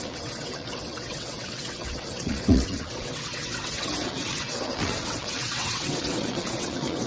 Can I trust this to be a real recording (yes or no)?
no